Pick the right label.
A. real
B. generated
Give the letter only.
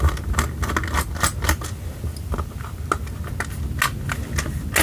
A